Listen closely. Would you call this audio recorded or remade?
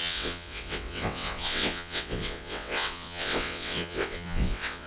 remade